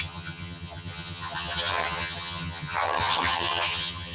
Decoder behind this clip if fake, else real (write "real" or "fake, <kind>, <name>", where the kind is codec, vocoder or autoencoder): fake, vocoder, HiFi-GAN